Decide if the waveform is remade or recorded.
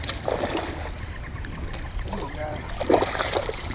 recorded